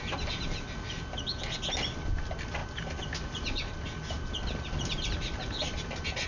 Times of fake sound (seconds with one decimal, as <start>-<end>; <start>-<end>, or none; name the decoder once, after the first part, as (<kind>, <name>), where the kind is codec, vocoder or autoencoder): none